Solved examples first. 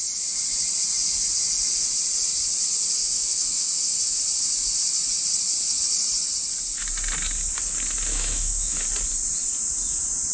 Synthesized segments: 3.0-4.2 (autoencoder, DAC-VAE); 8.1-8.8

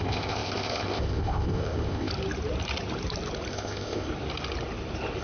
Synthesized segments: 0.0-2.1 (codec, ZipCodec); 3.5-4.1

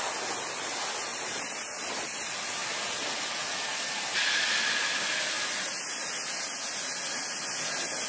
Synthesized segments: 1.1-1.9 (vocoder, BigVGAN v2)

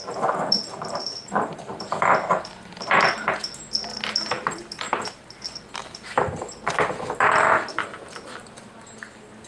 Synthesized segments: 5.8-6.7 (vocoder, BigVGAN v2)

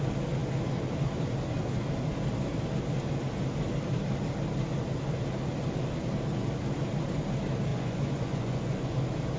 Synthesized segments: 7.7-8.9 (vocoder, Vocos)

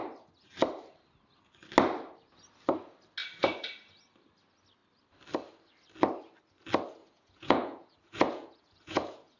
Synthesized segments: 7.0-9.4 (vocoder, Vocos)

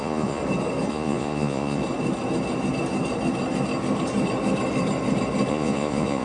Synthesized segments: 0.0-0.4 (vocoder, Vocos); 0.9-1.8; 5.5-6.2